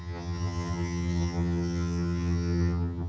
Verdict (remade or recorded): remade